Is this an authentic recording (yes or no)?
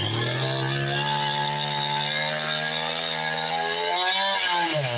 yes